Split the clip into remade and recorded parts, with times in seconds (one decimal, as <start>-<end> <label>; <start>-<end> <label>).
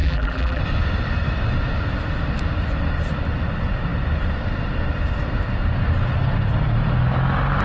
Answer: 0.0-0.6 remade; 0.6-7.6 recorded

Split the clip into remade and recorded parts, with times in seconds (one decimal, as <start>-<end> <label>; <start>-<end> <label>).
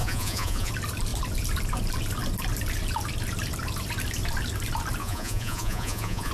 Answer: 0.0-0.7 remade; 0.7-5.0 recorded; 5.0-6.3 remade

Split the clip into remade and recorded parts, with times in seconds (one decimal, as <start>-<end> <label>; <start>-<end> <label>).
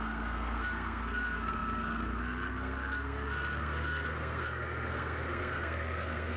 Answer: 0.0-6.4 remade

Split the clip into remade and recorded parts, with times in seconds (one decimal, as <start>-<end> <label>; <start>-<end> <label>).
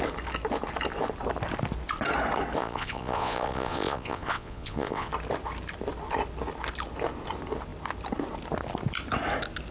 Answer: 0.0-2.6 recorded; 2.6-5.1 remade; 5.1-9.7 recorded